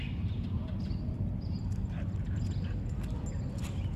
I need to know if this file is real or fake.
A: real